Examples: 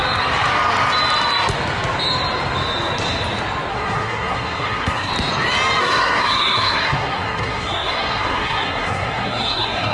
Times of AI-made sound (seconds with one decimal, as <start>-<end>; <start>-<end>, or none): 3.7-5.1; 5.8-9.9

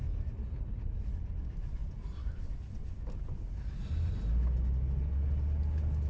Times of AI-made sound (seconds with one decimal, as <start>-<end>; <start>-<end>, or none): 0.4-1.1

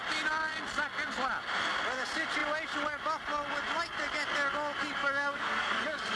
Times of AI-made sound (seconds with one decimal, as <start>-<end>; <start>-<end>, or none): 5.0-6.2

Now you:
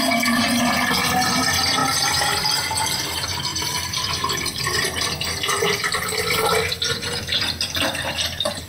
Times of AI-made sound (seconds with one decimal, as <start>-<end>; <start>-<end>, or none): 3.5-5.1; 5.5-6.7

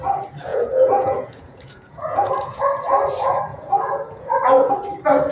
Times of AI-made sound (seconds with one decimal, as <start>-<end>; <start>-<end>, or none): 0.5-2.6; 3.5-4.7

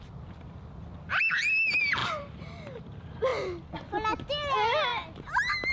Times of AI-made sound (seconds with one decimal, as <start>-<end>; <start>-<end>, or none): 2.0-2.9

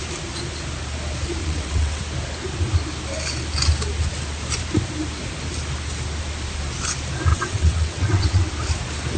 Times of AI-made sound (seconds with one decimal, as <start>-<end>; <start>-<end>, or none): 1.4-2.0; 7.3-8.5

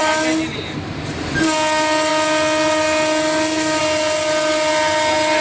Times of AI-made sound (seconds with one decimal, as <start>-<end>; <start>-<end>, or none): none